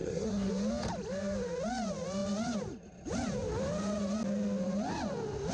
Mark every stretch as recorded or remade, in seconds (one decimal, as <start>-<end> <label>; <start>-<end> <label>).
0.0-0.5 remade; 0.5-5.5 recorded